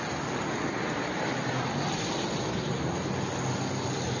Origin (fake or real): real